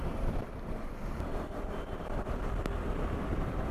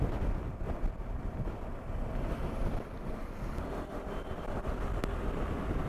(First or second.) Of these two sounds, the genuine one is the second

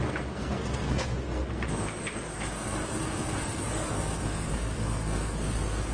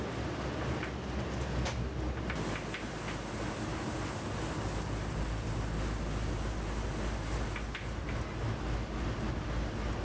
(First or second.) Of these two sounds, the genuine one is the second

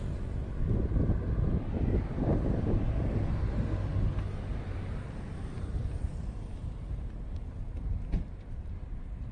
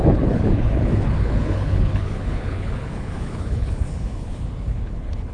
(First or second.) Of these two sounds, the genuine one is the first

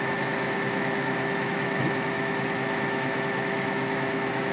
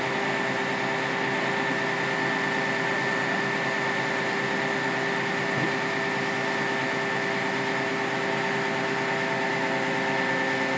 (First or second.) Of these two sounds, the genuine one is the second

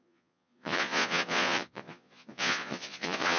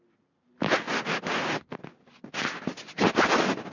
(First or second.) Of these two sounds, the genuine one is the second